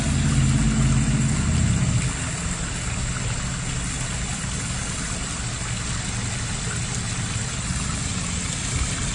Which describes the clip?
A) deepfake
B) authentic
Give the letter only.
B